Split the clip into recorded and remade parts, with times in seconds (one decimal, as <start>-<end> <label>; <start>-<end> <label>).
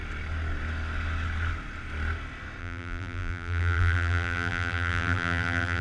0.0-2.6 recorded; 2.6-5.8 remade